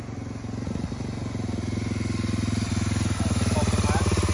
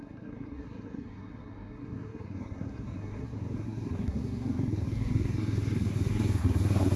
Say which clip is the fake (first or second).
second